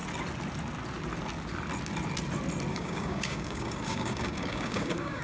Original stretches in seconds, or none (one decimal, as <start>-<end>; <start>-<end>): 0.0-2.7